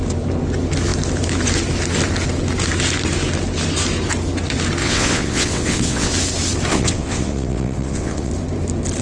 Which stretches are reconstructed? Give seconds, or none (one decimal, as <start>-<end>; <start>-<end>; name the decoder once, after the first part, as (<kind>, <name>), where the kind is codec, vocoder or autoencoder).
4.8-6.1 (vocoder, WaveNeXt); 6.7-8.3